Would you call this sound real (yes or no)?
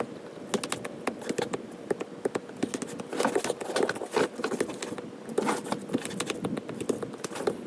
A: yes